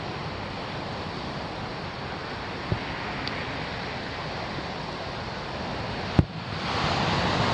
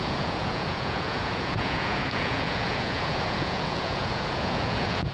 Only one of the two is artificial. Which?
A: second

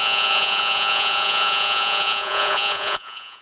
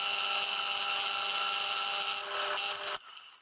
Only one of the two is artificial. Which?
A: first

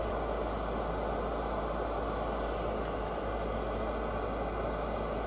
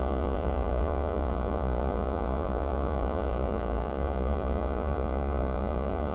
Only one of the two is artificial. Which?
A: second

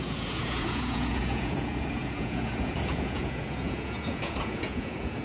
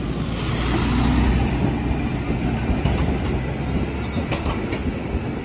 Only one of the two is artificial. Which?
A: first